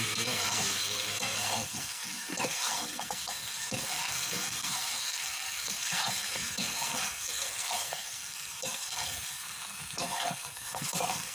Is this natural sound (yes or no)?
no